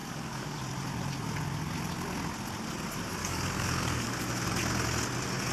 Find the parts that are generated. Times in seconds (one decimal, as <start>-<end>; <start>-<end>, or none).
0.0-0.6; 3.2-4.2